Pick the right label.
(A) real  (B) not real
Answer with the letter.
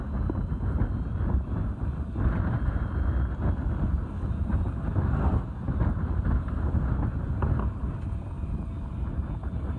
A